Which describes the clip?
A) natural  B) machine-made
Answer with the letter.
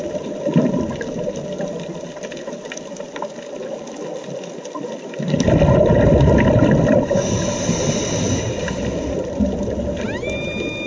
A